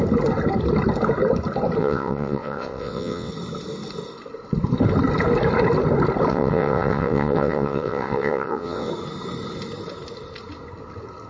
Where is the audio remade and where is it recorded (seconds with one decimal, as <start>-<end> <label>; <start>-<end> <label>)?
0.0-1.8 recorded; 1.8-3.3 remade; 3.3-6.3 recorded; 6.3-8.9 remade; 8.9-11.3 recorded